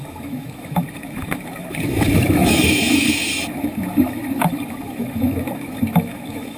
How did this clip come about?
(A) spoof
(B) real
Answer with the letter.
A